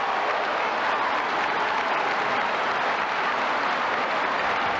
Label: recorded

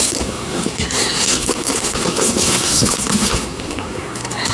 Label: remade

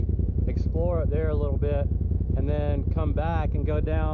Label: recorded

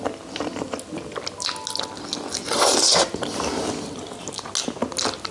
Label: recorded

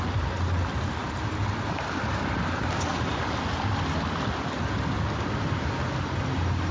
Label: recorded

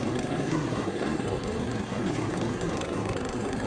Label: remade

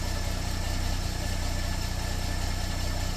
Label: recorded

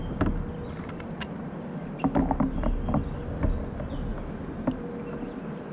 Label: recorded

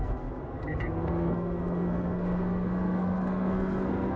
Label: remade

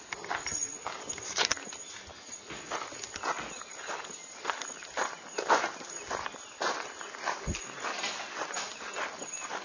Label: recorded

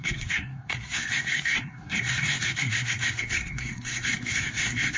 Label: remade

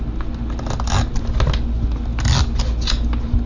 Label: recorded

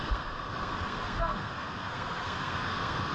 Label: remade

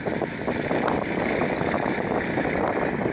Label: recorded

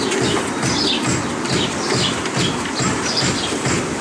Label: recorded